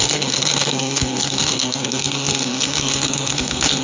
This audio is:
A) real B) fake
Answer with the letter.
B